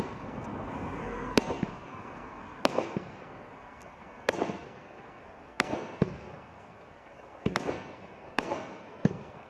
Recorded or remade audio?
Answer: remade